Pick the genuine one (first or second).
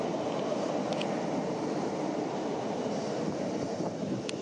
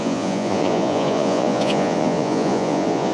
first